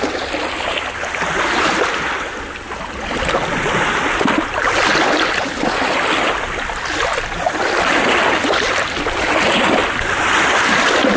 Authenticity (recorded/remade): recorded